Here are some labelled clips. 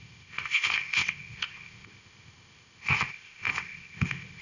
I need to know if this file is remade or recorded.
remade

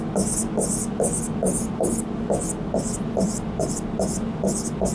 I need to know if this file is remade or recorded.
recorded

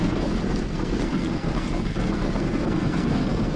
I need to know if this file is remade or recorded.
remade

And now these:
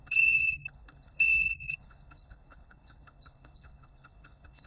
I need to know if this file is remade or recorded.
remade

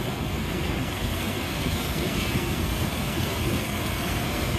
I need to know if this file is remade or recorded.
remade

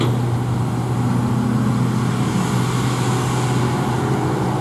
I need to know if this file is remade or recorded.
recorded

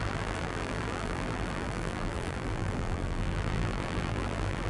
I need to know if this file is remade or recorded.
remade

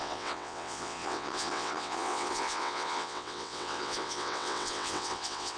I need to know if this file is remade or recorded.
remade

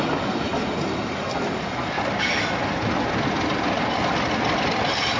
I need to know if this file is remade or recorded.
recorded